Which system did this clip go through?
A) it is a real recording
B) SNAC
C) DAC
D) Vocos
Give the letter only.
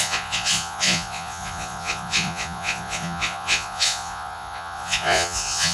D